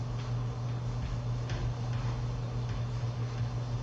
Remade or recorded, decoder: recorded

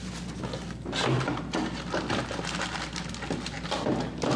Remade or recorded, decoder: recorded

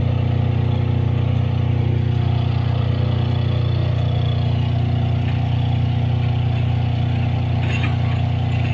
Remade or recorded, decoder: recorded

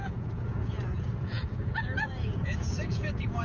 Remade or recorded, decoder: remade, vocoder, Vocos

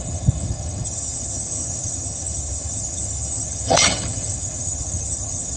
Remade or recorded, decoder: remade, vocoder, HiFi-GAN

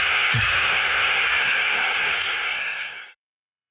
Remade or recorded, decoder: remade, codec, SNAC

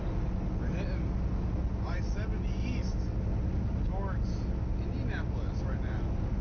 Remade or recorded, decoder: recorded